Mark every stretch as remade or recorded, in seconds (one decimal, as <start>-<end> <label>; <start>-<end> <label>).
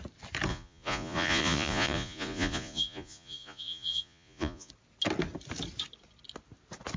0.0-0.5 recorded; 0.5-4.7 remade; 4.7-7.0 recorded